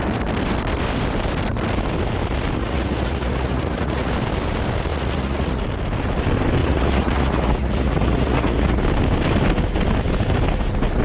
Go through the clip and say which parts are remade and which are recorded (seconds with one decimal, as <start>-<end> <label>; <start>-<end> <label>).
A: 0.0-2.6 recorded; 2.6-4.1 remade; 4.1-4.9 recorded; 4.9-5.6 remade; 5.6-6.6 recorded; 6.6-8.8 remade; 8.8-11.0 recorded